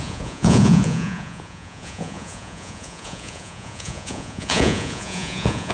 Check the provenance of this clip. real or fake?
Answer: fake